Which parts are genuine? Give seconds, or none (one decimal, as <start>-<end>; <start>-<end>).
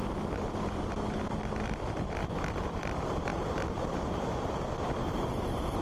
0.0-5.8